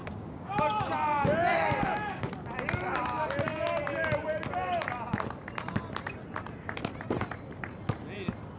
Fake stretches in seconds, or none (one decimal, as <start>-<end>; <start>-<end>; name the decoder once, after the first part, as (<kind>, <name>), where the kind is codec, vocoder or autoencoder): 0.0-0.6 (codec, DAC); 1.5-2.3